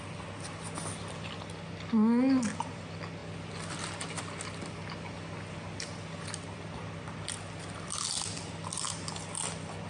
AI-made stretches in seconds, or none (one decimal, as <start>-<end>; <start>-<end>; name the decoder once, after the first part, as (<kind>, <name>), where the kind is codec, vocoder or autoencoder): none